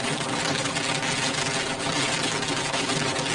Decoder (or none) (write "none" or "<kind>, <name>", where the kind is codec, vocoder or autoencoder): none